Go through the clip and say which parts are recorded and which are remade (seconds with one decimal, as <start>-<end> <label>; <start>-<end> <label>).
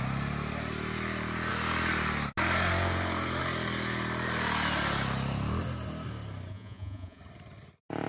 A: 0.0-6.5 recorded; 6.5-7.2 remade; 7.2-8.1 recorded